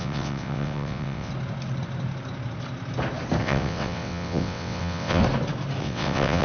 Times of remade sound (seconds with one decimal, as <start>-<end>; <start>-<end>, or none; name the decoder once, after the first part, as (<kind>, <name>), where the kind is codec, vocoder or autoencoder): 0.0-1.3 (vocoder, WaveNeXt); 3.4-5.2; 5.8-6.4